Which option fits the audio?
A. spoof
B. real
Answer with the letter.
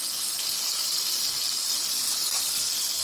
B